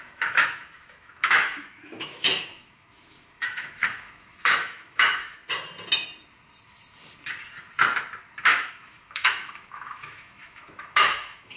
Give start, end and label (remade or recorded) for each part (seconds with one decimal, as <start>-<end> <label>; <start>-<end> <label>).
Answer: 0.0-5.4 remade; 5.4-8.7 recorded; 8.7-11.6 remade